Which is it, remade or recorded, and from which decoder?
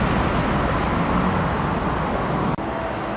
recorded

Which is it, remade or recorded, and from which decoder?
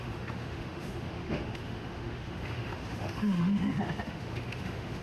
remade, autoencoder, DAC-VAE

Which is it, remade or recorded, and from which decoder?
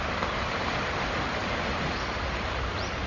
remade, vocoder, BigVGAN v2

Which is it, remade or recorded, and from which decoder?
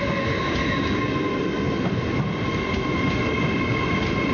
recorded